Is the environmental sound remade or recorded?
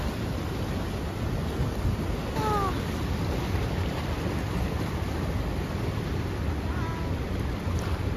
recorded